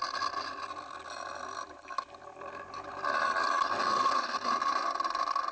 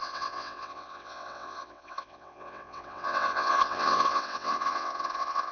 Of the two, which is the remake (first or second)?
second